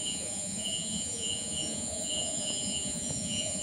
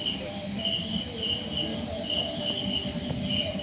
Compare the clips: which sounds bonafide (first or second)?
second